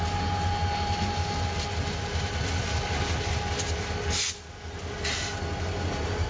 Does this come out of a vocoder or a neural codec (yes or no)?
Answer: no